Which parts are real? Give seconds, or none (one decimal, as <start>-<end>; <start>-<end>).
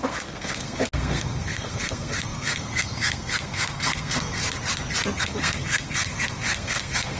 4.4-5.2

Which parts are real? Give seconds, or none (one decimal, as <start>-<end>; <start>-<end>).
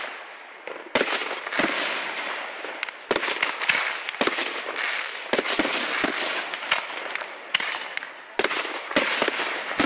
0.0-4.4; 7.5-9.9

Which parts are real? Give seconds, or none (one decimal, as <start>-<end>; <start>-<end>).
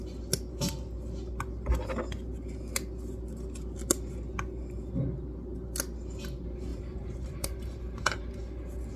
0.0-6.7; 8.3-9.0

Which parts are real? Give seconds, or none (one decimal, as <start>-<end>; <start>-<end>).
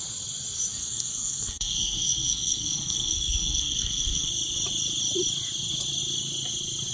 0.0-0.7; 4.3-6.9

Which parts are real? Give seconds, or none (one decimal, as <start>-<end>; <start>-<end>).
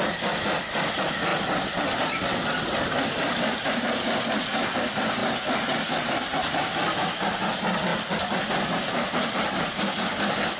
0.0-1.3; 3.8-10.6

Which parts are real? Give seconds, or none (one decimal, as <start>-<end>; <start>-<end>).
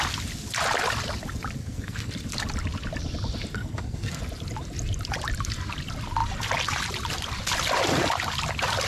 0.0-1.6; 2.1-3.5; 4.2-8.9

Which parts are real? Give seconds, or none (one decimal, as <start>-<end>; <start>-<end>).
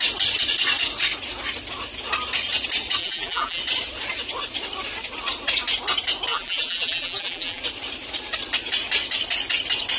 0.0-3.0; 3.6-6.3; 7.6-10.0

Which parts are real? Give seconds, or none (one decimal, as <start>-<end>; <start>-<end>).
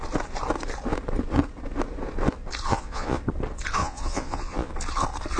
0.0-2.7; 3.2-3.8; 4.7-5.4